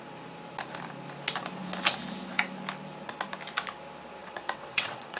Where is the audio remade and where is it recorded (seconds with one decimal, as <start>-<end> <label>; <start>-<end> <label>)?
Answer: 0.0-4.2 recorded; 4.2-5.2 remade